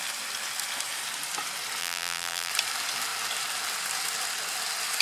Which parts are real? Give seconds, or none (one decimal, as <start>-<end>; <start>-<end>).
0.0-1.8; 2.5-5.0